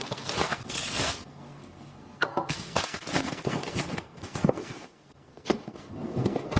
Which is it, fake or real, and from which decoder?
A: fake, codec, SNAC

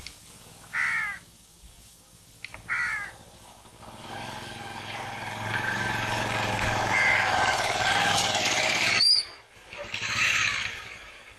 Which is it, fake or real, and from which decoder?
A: fake, codec, DAC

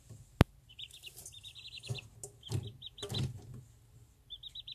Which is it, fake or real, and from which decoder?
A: real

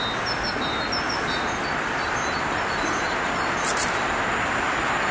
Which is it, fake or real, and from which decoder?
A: real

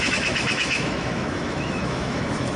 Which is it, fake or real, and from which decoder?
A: fake, autoencoder, DAC-VAE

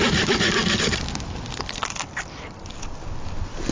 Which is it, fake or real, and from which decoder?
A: real